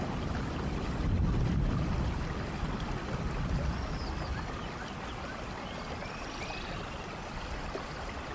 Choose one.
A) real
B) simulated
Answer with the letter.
A